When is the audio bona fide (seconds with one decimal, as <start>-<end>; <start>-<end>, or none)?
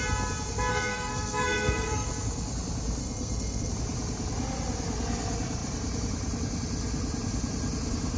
0.0-0.7; 2.1-3.0; 3.7-8.2